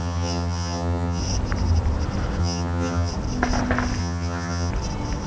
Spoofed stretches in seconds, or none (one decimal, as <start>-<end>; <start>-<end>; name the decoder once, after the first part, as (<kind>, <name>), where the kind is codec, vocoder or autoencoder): 0.0-1.2 (vocoder, HiFi-GAN); 2.4-3.1; 4.0-4.7